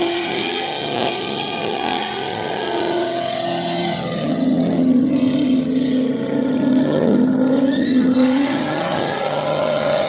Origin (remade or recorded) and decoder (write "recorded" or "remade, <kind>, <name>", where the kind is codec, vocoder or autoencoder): remade, vocoder, HiFi-GAN